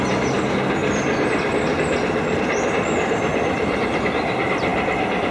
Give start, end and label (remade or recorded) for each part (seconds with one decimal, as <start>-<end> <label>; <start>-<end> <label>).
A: 0.0-0.8 recorded; 0.8-4.0 remade; 4.0-5.3 recorded